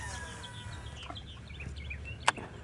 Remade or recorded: recorded